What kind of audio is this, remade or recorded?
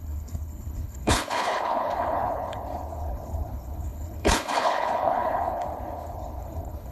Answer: remade